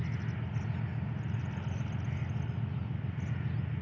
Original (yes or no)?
yes